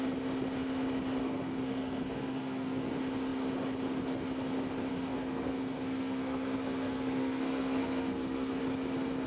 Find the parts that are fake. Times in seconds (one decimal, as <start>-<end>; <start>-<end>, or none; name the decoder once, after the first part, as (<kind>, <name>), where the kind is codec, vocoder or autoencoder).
1.2-2.9 (codec, SNAC); 4.9-8.6